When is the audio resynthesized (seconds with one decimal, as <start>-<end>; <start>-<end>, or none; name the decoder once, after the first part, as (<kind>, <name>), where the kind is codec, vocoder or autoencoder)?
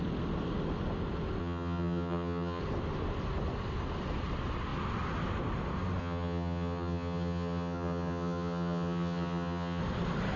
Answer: 1.4-2.6 (vocoder, HiFi-GAN); 6.0-9.8